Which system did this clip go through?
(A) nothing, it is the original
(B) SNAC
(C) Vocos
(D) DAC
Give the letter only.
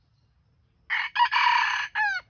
A